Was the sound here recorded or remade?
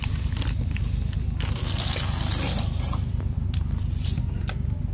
recorded